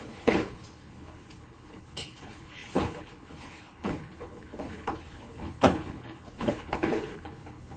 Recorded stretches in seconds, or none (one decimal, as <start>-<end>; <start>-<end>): none